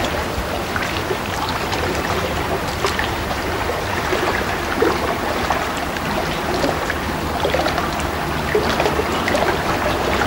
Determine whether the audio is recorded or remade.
remade